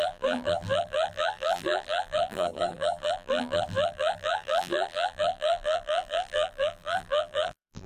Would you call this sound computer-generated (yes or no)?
yes